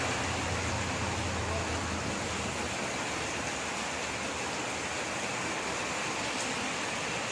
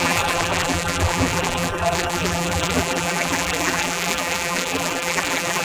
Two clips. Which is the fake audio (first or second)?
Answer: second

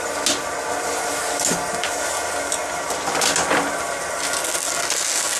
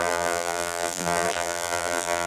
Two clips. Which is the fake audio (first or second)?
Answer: second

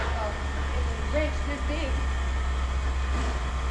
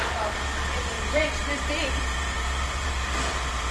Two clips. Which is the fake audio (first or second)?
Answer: second